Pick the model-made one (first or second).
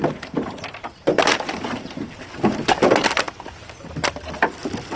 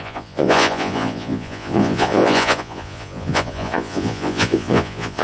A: second